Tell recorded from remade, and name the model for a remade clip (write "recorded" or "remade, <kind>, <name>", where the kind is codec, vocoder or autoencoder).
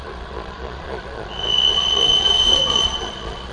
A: remade, vocoder, Vocos